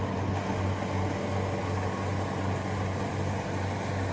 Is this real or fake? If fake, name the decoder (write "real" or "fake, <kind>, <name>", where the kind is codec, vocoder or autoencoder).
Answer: real